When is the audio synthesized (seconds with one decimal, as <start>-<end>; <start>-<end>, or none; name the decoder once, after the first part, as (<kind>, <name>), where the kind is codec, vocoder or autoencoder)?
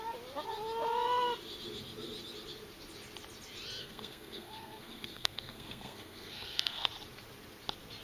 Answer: 3.8-6.9 (codec, SNAC)